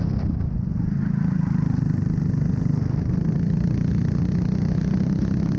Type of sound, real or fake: real